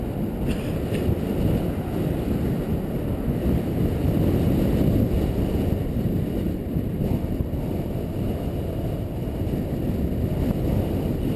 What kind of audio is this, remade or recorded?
recorded